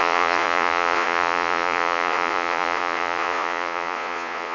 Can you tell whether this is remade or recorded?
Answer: remade